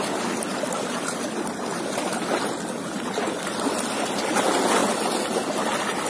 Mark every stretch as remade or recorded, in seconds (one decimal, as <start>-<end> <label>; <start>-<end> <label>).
0.0-0.5 recorded; 0.5-4.2 remade; 4.2-6.1 recorded